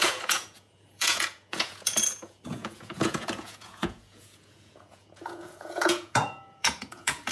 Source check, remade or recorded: remade